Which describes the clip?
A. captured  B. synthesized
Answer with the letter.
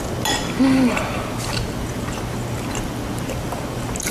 A